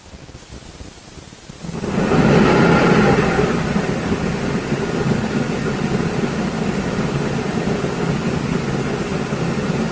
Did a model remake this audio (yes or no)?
no